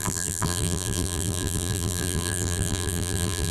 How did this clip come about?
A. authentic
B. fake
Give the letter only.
B